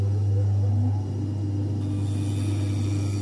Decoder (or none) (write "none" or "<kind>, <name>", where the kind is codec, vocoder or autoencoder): none